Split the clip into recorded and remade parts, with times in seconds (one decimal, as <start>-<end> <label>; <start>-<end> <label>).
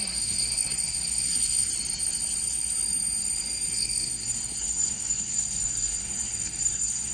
0.0-1.7 remade; 1.7-3.7 recorded; 3.7-7.1 remade